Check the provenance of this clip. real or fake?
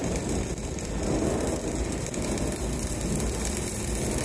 real